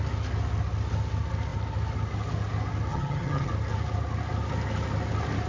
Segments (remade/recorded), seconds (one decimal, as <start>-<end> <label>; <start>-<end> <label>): 0.0-2.9 recorded; 2.9-3.5 remade; 3.5-5.5 recorded